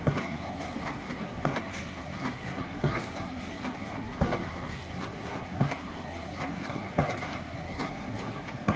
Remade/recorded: remade